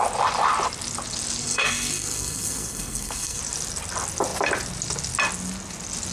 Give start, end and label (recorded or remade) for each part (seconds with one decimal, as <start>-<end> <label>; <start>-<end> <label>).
0.0-1.4 recorded; 1.4-3.4 remade; 3.4-6.1 recorded